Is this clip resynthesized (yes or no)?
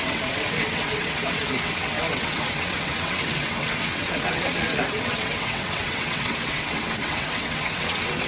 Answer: yes